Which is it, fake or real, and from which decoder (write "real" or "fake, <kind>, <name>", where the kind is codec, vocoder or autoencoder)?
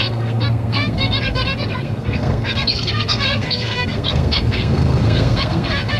fake, codec, SNAC